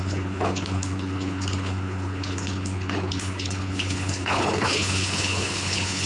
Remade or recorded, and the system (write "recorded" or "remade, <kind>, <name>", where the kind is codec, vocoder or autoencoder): remade, codec, HILCodec